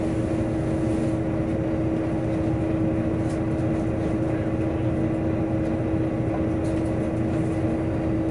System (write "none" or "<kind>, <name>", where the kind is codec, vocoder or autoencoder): none